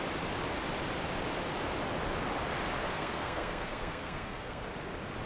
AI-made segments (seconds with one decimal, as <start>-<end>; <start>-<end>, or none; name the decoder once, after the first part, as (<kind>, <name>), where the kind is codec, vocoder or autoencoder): 2.8-4.6 (codec, SNAC)